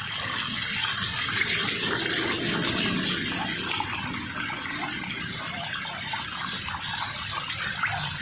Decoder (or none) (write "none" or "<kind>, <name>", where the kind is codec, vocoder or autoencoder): none